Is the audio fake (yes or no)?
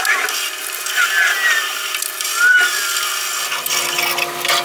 no